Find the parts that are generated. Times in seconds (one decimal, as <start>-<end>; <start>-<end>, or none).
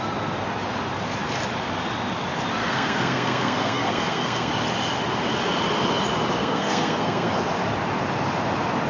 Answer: 2.6-4.5; 6.4-7.4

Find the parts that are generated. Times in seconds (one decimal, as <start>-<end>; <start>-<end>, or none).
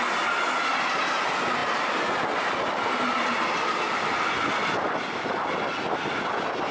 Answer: none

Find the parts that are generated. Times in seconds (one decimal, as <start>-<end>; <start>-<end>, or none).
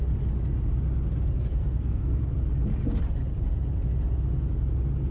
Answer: 1.5-2.2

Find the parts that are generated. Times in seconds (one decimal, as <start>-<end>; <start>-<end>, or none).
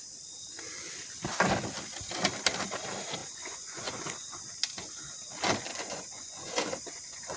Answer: 3.2-4.4; 5.7-7.4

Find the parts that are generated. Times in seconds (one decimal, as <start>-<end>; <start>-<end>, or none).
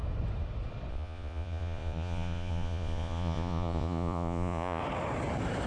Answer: 0.9-4.8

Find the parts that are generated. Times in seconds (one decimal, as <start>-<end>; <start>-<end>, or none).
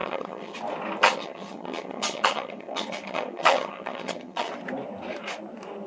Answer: 0.0-0.6; 1.0-4.5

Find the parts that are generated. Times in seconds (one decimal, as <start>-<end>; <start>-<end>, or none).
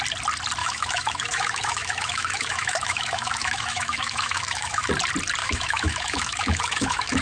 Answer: 0.6-4.9; 5.4-7.2